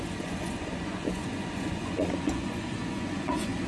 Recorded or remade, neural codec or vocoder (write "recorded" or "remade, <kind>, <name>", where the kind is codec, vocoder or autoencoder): remade, vocoder, Vocos